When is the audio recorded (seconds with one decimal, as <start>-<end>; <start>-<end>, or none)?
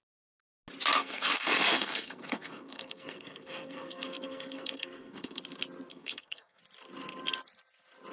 0.0-1.0; 5.4-5.9; 6.6-8.1